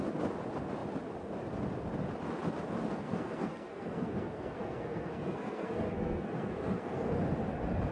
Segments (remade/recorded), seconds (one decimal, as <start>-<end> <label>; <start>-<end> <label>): 0.0-2.9 recorded; 2.9-7.2 remade; 7.2-7.9 recorded